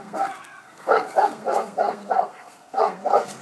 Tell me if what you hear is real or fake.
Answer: fake